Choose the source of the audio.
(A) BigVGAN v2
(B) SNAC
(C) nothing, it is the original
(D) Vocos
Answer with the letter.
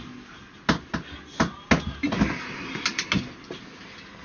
C